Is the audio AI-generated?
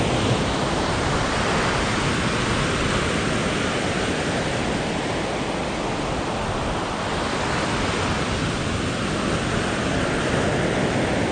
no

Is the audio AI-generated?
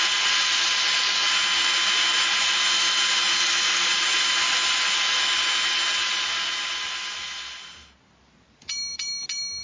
no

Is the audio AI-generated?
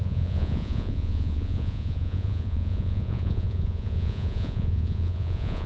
yes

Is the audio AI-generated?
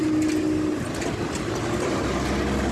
no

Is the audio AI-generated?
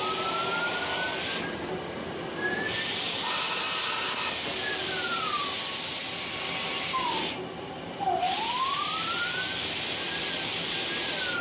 no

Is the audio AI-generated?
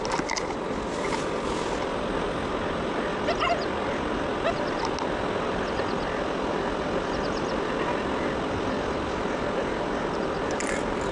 no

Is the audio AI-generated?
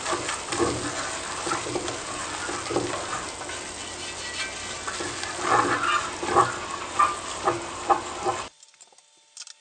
no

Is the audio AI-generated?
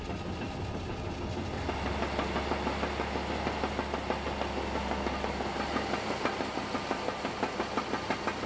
no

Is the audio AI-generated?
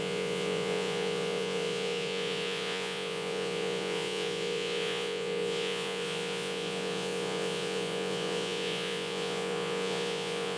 yes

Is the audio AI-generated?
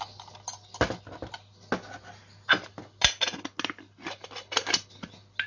no